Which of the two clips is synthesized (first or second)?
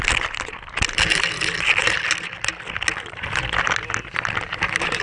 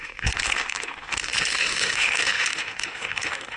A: second